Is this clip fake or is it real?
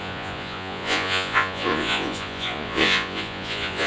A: fake